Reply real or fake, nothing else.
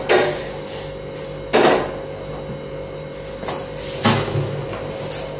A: real